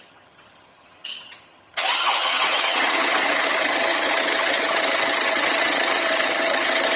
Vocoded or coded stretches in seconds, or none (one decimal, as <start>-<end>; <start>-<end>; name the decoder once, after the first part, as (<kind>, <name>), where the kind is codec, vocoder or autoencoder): 0.0-7.0 (vocoder, HiFi-GAN)